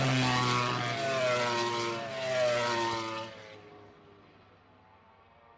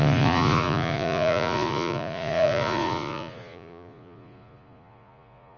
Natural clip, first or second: first